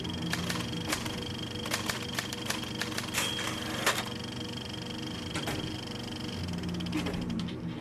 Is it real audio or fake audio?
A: real